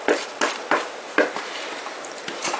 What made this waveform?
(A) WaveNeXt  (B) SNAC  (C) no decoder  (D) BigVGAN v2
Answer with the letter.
D